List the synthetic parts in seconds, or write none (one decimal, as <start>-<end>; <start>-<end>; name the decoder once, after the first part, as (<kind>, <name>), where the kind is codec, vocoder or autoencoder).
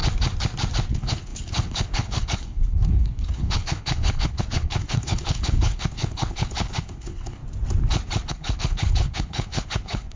0.9-7.4 (codec, HILCodec); 8.3-10.2